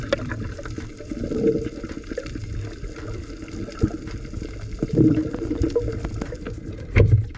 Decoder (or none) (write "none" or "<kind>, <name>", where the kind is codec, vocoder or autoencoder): none